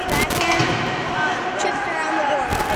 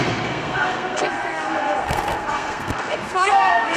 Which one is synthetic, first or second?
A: second